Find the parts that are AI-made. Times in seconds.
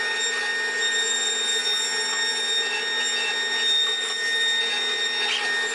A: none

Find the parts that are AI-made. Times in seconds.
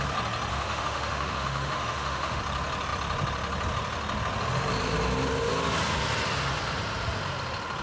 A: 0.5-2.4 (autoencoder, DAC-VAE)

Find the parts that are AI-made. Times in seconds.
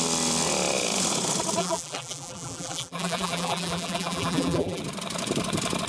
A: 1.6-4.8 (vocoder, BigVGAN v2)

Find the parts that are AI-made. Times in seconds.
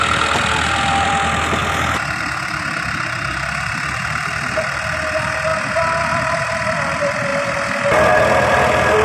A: 0.0-1.6 (vocoder, BigVGAN v2); 2.2-5.5; 6.0-7.3; 8.1-9.0